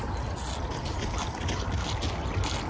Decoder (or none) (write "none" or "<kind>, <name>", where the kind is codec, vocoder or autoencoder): none